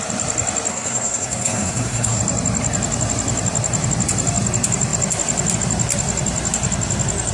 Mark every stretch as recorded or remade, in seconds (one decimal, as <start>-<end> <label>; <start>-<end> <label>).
0.0-0.7 recorded; 0.7-2.2 remade; 2.2-7.3 recorded